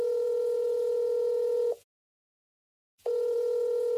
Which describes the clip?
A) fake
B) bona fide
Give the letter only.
A